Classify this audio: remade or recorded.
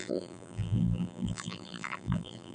remade